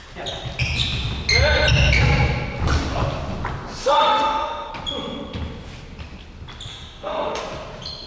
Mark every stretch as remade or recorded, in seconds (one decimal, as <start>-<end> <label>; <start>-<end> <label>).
0.0-3.8 recorded; 3.8-4.7 remade; 4.7-6.7 recorded; 6.7-7.4 remade; 7.4-8.1 recorded